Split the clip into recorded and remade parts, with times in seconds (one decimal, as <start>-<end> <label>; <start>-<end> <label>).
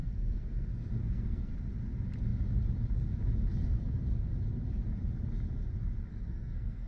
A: 0.0-1.5 remade; 1.5-6.1 recorded; 6.1-6.9 remade